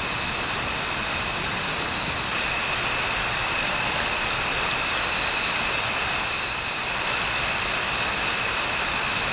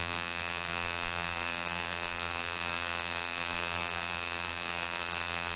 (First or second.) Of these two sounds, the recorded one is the first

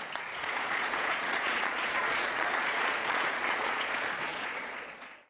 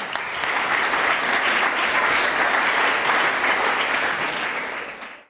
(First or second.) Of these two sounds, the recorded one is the second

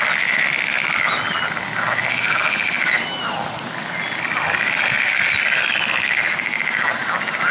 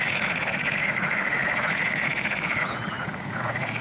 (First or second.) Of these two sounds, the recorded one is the first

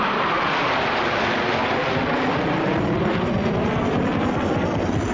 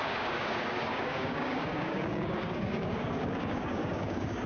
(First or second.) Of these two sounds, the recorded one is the first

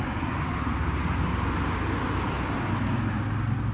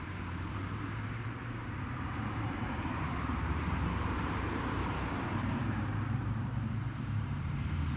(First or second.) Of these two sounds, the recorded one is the first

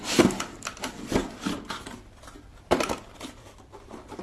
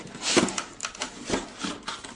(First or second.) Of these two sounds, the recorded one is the second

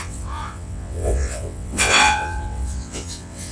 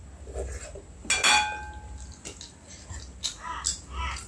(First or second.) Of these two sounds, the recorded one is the second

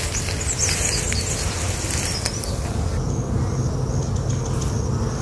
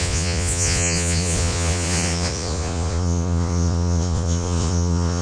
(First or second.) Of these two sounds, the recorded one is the first